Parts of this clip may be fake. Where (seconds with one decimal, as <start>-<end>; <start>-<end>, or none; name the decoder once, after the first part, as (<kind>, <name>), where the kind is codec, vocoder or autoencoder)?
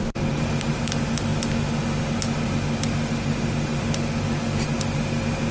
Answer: none